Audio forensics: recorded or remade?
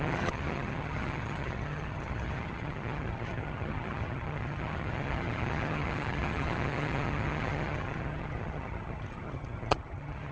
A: remade